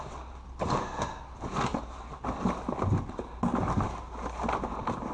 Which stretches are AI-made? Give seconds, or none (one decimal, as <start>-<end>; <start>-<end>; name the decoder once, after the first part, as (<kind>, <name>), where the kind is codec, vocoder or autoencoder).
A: none